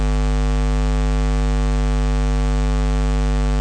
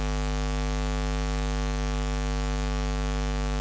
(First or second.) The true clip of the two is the first